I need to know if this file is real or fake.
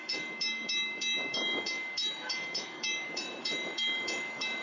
fake